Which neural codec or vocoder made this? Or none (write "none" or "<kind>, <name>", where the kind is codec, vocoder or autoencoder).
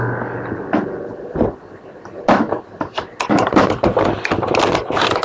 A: none